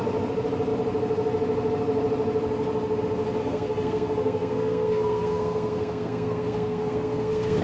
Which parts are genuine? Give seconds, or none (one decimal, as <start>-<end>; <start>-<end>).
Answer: 0.0-3.4